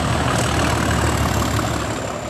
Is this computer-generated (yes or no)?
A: no